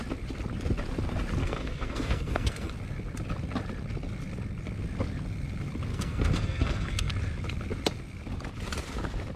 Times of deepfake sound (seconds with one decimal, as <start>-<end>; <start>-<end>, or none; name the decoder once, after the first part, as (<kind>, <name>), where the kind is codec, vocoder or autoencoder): 1.4-2.7 (codec, SNAC); 5.9-7.1